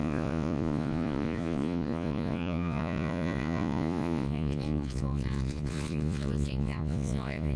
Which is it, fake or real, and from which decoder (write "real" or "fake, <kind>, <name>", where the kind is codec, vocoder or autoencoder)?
fake, vocoder, Vocos